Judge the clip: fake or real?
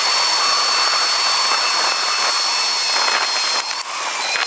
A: real